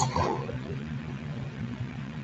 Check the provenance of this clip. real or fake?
fake